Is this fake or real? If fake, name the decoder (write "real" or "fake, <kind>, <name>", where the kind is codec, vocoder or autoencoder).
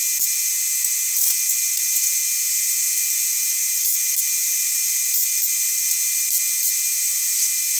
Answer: real